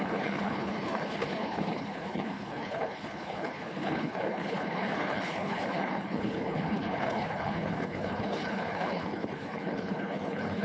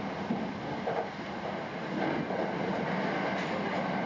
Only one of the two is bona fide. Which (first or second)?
second